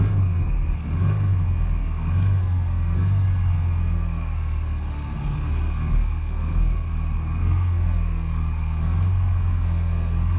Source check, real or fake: fake